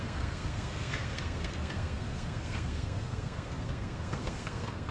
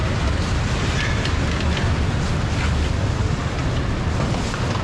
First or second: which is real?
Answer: second